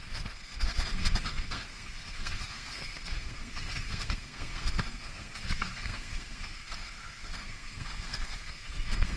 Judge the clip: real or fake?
fake